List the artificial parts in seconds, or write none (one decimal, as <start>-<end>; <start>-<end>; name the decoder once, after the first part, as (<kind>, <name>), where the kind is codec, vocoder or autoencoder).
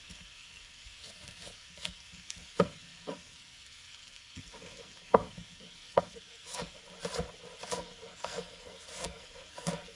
0.0-6.8 (codec, SNAC); 7.7-10.0